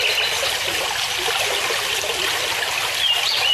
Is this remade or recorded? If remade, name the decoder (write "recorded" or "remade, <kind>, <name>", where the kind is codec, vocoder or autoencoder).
recorded